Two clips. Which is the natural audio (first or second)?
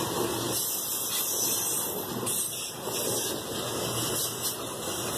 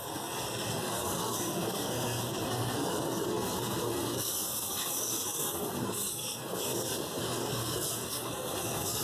first